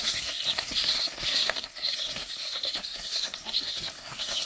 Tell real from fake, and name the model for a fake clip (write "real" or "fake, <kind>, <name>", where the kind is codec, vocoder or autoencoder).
fake, codec, SNAC